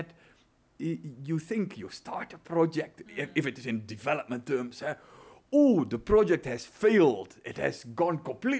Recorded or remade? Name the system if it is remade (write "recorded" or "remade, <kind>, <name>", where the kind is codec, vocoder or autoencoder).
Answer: recorded